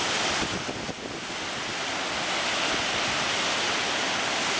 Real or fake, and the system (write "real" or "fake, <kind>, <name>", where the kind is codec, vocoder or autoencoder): real